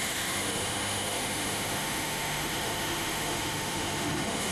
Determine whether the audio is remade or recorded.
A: remade